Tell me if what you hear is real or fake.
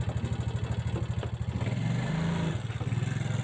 real